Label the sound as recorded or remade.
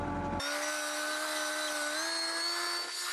recorded